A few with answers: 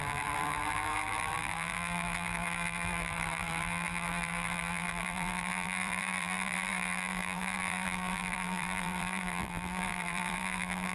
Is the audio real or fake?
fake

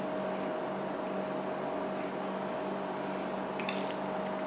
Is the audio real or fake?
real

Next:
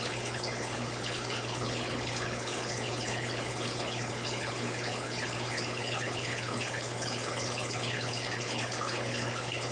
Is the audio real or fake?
fake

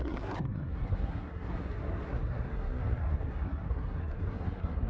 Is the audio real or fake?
fake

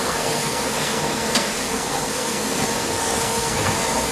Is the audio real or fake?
fake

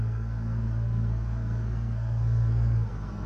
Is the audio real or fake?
fake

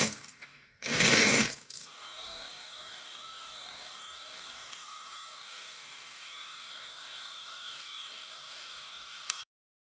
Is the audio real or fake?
fake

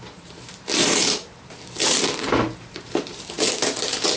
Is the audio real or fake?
fake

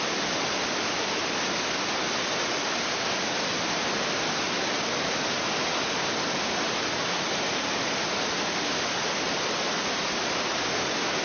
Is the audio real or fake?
real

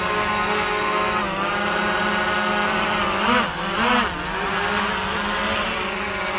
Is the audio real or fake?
real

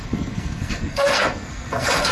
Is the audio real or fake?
fake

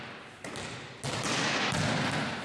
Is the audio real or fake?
real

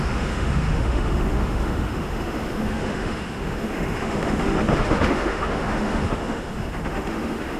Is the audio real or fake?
fake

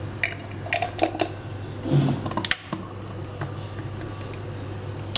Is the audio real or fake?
real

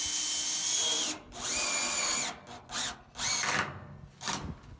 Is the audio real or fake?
real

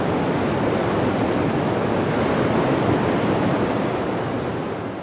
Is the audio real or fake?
real